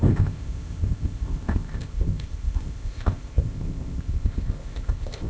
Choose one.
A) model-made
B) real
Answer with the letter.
A